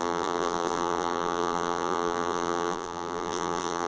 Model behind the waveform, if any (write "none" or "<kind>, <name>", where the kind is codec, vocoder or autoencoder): vocoder, BigVGAN v2